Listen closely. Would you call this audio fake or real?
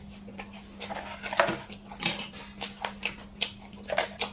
real